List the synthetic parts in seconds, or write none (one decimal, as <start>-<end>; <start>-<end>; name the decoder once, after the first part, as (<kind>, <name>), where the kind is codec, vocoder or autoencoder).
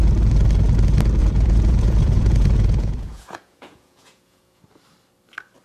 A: 1.2-4.6 (vocoder, Vocos)